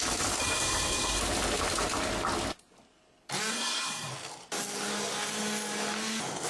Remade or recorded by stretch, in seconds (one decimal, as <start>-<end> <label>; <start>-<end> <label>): 0.0-0.4 recorded; 0.4-1.2 remade; 1.2-3.5 recorded; 3.5-4.1 remade; 4.1-6.5 recorded